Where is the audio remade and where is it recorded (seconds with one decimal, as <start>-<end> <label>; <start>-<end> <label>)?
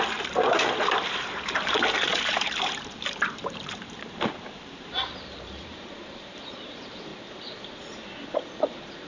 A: 0.0-7.1 remade; 7.1-9.1 recorded